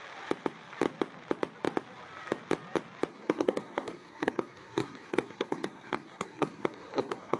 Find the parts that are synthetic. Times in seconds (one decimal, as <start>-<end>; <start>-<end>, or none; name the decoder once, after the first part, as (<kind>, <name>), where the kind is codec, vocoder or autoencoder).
3.1-7.4 (codec, SNAC)